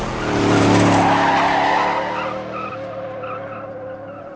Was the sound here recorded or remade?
recorded